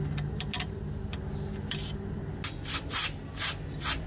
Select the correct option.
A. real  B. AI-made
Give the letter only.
A